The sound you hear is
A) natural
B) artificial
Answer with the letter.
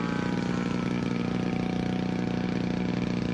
A